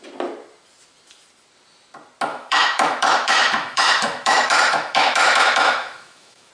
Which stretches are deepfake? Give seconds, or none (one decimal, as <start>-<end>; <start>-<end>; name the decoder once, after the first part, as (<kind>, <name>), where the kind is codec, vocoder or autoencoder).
2.3-6.5 (autoencoder, DAC-VAE)